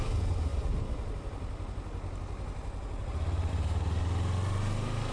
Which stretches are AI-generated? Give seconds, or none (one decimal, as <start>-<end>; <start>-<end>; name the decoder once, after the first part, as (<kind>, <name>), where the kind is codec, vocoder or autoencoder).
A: none